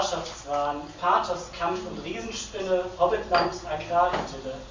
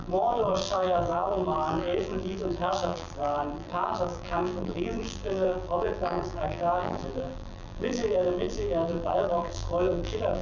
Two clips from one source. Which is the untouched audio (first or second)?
first